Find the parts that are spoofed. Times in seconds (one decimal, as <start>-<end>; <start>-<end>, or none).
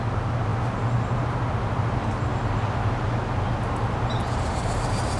none